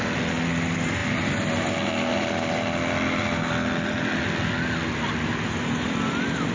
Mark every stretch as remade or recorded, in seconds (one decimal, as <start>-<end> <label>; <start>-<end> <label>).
0.0-6.5 recorded

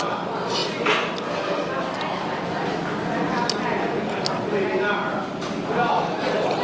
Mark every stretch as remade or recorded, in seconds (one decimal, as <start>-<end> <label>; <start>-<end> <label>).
0.0-6.6 recorded

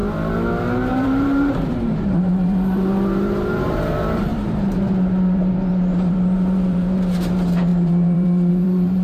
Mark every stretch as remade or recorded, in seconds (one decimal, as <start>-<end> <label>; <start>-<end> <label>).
0.0-0.9 recorded; 0.9-9.0 remade

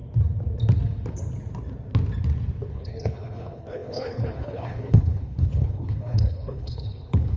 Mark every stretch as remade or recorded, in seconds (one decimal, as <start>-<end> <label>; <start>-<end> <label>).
0.0-2.7 recorded; 2.7-7.4 remade

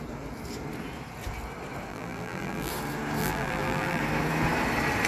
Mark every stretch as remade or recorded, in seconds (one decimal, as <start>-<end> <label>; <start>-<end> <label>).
0.0-1.9 recorded; 1.9-2.7 remade; 2.7-3.2 recorded; 3.2-4.0 remade; 4.0-5.1 recorded